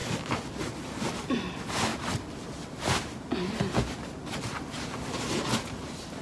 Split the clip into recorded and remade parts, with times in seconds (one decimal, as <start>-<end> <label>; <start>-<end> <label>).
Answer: 0.0-6.2 recorded